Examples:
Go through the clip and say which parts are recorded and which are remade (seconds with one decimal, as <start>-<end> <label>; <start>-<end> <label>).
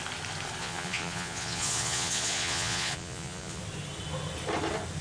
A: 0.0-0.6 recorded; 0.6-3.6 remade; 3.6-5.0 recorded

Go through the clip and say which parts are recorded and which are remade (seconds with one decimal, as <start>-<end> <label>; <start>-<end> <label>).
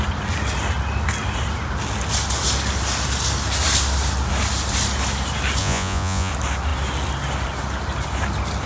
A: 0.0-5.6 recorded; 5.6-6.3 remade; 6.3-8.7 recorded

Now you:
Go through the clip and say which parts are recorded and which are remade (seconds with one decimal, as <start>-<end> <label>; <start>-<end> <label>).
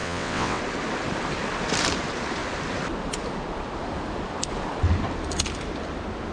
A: 0.0-0.6 remade; 0.6-6.3 recorded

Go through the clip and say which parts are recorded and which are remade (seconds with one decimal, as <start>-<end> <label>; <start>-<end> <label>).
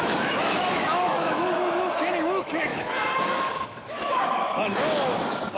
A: 0.0-5.6 remade